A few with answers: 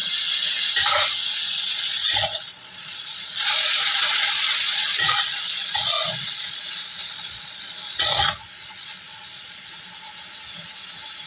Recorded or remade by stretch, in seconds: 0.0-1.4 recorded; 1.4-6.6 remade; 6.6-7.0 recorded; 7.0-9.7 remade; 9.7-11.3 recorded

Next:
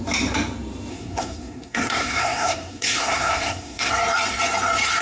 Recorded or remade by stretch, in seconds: 0.0-0.9 recorded; 0.9-3.9 remade; 3.9-5.0 recorded

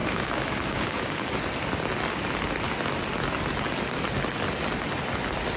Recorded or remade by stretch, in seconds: 0.0-1.4 remade; 1.4-5.6 recorded

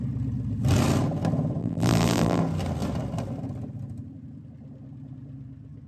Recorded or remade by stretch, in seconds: 0.0-1.6 recorded; 1.6-2.4 remade; 2.4-5.9 recorded

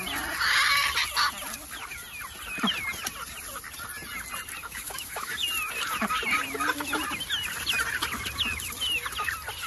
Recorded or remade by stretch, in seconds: 0.0-4.6 recorded; 4.6-5.3 remade; 5.3-9.7 recorded

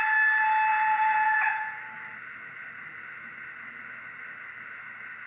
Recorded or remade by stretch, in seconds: 0.0-0.7 recorded; 0.7-1.8 remade; 1.8-5.3 recorded